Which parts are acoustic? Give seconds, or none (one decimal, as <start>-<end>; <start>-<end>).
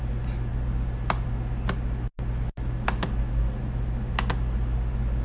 0.0-5.2